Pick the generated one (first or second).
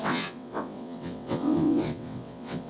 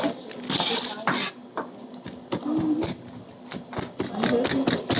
first